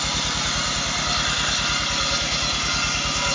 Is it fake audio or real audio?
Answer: real